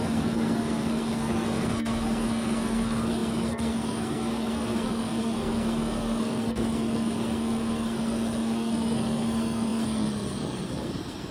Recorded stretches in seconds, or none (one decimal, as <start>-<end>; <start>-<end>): none